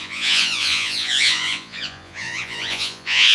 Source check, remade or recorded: remade